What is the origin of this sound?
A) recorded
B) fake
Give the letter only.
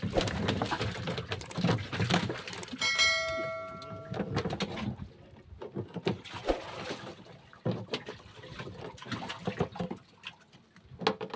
A